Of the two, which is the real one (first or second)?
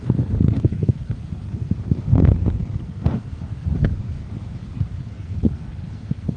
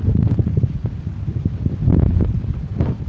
second